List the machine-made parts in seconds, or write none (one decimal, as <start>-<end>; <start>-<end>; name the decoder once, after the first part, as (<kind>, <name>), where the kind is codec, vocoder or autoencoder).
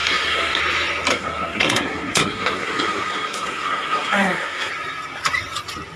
0.0-0.6 (codec, SNAC); 1.1-4.7